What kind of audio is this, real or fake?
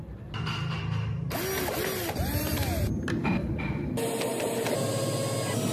real